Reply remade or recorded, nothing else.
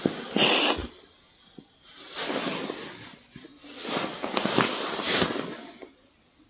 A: recorded